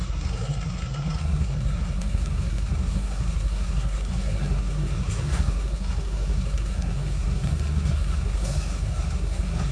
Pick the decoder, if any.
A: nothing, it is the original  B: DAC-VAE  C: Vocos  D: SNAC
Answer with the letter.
D